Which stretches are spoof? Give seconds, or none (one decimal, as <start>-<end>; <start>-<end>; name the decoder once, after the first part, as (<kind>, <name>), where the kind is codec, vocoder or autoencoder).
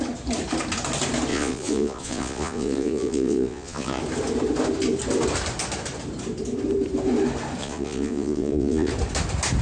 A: 1.3-4.0 (vocoder, Vocos); 7.6-8.9